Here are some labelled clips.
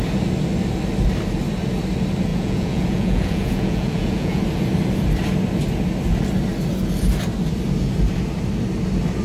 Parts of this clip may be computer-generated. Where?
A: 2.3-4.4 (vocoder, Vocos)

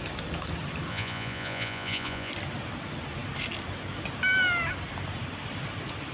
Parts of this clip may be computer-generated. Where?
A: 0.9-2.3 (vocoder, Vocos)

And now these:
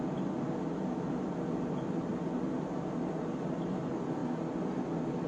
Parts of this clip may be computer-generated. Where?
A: none